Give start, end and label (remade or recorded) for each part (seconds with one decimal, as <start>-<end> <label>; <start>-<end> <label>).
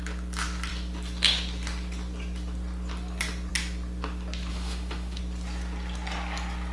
0.0-4.5 recorded; 4.5-5.2 remade; 5.2-6.7 recorded